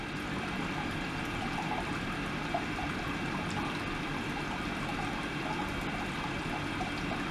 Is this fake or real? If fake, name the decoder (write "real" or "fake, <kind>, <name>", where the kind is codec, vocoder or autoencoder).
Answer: fake, vocoder, BigVGAN v2